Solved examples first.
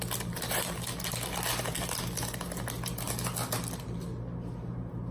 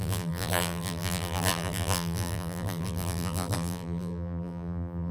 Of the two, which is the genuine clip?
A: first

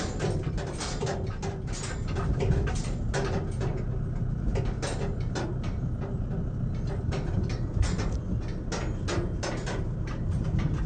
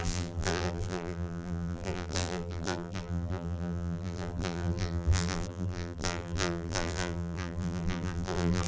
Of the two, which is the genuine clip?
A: first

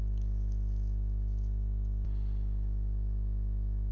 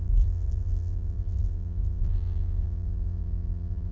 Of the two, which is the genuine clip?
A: first